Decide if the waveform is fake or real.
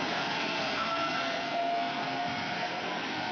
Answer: fake